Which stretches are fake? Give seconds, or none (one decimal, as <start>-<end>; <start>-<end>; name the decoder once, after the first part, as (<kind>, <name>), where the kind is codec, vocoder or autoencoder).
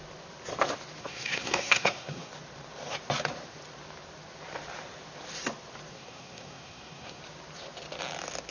1.0-2.3 (codec, SNAC); 5.9-7.2